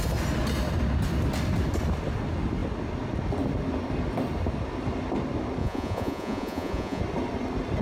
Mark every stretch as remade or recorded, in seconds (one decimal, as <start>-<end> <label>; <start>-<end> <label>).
0.0-5.6 recorded; 5.6-7.0 remade; 7.0-7.8 recorded